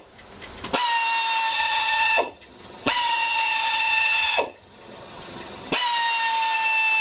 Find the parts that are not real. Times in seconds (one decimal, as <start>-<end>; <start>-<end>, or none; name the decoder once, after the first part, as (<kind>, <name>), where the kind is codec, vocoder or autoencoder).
1.5-5.7 (vocoder, HiFi-GAN)